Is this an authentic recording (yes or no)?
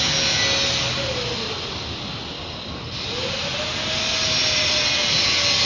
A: yes